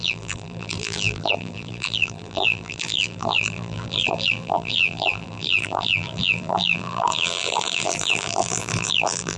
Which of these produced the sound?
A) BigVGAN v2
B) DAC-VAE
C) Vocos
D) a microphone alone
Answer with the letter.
A